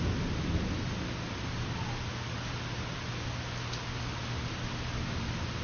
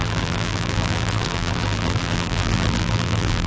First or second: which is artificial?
second